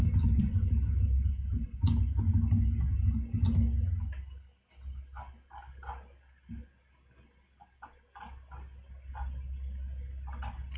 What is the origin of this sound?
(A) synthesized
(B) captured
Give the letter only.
B